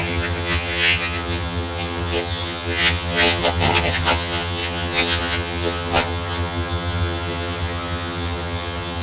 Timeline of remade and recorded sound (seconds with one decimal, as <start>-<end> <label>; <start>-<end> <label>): 0.0-9.0 remade